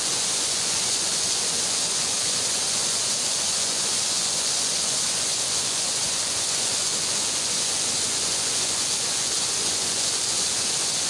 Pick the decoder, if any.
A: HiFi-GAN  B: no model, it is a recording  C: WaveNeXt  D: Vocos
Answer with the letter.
D